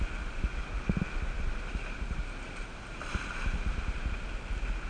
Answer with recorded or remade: recorded